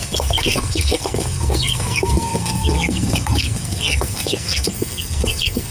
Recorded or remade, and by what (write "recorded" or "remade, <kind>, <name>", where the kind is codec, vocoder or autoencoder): remade, codec, SNAC